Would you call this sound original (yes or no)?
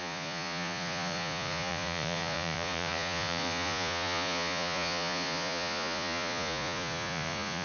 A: no